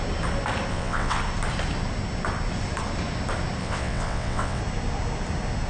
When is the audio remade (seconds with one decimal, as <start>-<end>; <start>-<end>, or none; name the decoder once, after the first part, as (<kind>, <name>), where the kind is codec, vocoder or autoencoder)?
0.7-1.2 (vocoder, WaveNeXt); 3.6-4.6